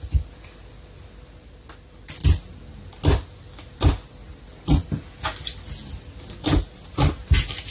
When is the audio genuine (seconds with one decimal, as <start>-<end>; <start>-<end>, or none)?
0.0-2.2; 2.8-7.7